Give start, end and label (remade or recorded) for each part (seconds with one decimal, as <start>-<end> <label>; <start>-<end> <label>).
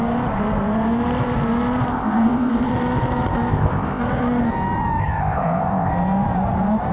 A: 0.0-1.9 recorded; 1.9-2.7 remade; 2.7-3.5 recorded; 3.5-4.0 remade; 4.0-5.0 recorded; 5.0-5.9 remade; 5.9-6.9 recorded